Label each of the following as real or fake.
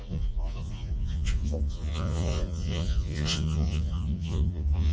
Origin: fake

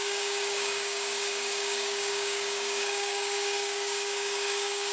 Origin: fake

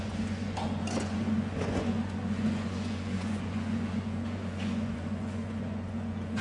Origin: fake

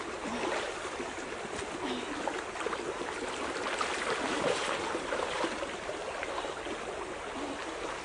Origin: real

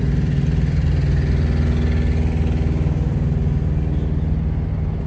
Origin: real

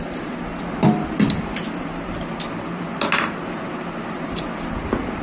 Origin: real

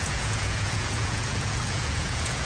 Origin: fake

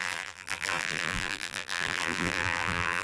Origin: fake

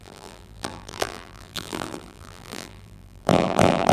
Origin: fake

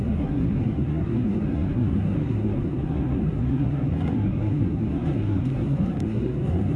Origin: fake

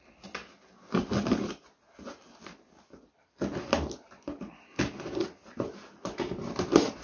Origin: real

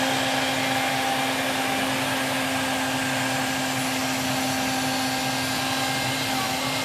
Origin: real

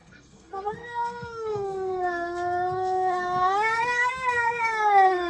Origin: fake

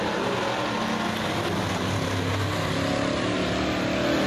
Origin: real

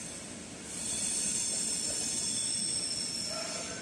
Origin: real